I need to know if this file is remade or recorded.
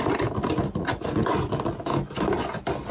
recorded